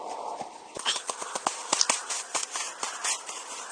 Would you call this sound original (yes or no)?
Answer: yes